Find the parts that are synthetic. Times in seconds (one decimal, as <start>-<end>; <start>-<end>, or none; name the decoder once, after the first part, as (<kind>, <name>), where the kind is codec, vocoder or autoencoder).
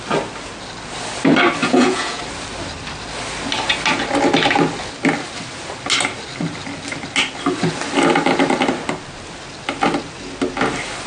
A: 1.6-2.2 (vocoder, Vocos)